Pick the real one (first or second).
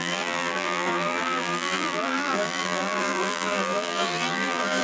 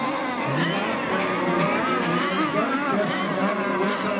second